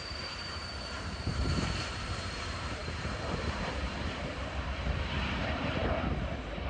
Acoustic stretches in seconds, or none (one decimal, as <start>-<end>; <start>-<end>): 5.8-6.7